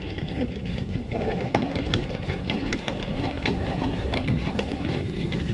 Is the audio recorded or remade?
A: remade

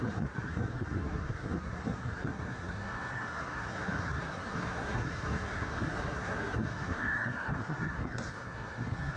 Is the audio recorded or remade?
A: remade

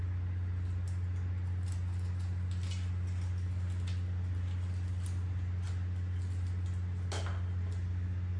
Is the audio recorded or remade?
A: recorded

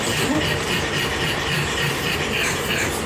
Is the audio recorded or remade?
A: remade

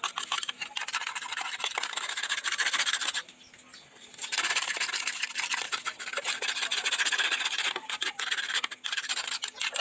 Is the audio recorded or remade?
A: recorded